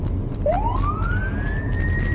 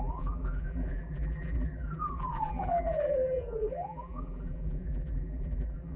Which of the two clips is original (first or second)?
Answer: first